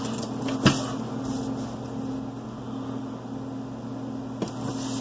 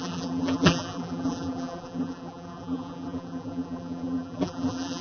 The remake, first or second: second